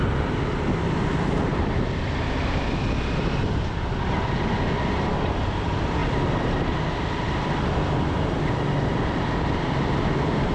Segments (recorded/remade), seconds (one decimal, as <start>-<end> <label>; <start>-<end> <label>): 0.0-10.5 recorded